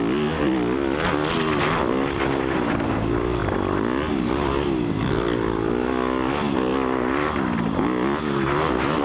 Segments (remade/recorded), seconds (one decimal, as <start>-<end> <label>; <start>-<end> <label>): 0.0-9.0 recorded